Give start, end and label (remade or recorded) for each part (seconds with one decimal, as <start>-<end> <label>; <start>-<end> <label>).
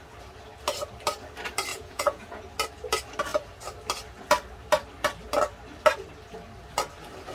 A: 0.0-1.7 recorded; 1.7-2.4 remade; 2.4-7.3 recorded